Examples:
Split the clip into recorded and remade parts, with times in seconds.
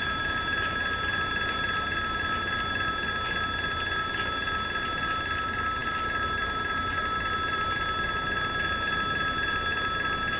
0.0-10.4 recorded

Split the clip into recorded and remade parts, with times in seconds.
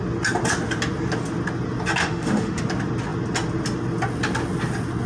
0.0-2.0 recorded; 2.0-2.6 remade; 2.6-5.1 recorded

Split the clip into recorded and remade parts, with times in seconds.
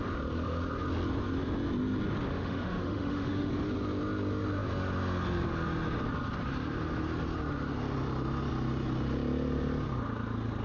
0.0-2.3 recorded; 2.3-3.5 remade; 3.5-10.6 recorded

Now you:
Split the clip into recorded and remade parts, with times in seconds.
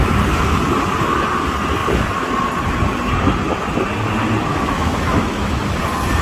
0.0-4.5 recorded; 4.5-5.6 remade; 5.6-6.2 recorded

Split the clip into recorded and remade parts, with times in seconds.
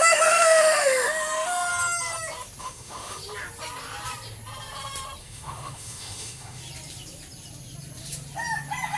0.0-1.7 remade; 1.7-2.6 recorded; 2.6-3.2 remade; 3.2-5.2 recorded; 5.2-6.6 remade; 6.6-9.0 recorded